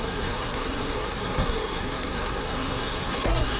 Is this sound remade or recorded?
remade